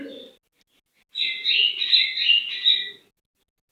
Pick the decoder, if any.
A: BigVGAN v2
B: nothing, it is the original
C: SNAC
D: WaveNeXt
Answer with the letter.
B